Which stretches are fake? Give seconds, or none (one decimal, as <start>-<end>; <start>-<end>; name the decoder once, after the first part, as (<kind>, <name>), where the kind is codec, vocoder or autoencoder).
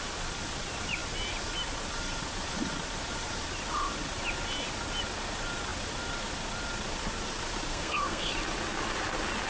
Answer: 7.7-8.3 (codec, SNAC)